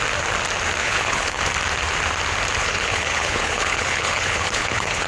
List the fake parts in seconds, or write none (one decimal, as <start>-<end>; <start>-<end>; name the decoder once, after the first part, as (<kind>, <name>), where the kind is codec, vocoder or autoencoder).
0.8-1.4 (codec, HILCodec); 2.6-5.1